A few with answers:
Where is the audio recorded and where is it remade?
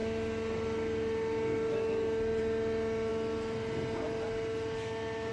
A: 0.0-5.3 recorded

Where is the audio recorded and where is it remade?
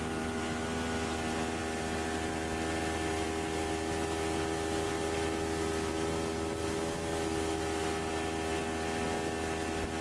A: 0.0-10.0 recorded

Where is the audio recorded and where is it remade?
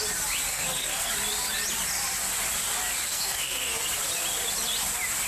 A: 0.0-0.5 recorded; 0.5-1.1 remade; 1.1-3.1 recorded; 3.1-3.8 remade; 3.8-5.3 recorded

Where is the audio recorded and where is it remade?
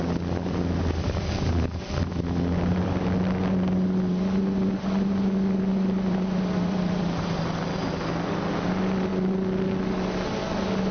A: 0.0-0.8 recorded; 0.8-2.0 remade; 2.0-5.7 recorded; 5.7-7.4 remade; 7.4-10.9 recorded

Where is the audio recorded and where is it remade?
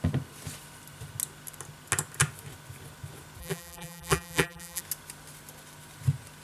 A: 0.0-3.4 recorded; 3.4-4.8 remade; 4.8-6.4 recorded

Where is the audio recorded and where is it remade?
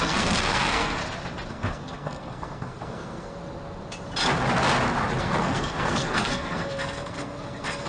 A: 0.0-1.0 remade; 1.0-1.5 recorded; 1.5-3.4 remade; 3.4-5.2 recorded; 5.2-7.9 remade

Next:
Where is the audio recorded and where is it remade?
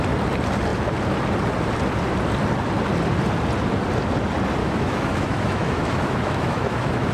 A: 0.0-4.6 recorded; 4.6-7.1 remade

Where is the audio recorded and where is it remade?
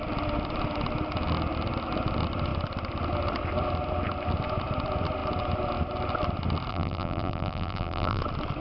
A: 0.0-6.7 recorded; 6.7-8.2 remade; 8.2-8.6 recorded